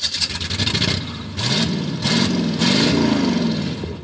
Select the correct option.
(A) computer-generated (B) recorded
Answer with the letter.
B